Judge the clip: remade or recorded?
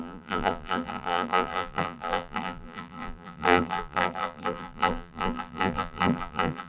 remade